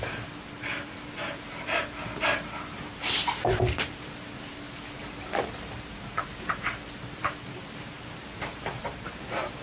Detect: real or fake fake